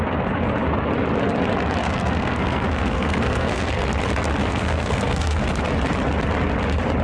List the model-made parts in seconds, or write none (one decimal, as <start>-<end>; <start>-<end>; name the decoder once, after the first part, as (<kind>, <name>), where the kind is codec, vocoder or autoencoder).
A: 1.8-3.7 (codec, SNAC); 4.4-5.5